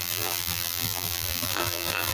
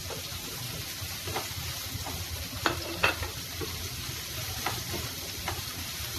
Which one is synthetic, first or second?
first